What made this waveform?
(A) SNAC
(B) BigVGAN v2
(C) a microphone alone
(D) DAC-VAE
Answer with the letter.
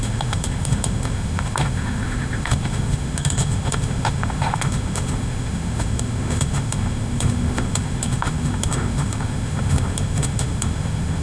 D